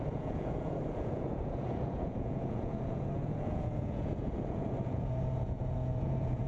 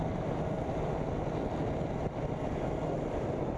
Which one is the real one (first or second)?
second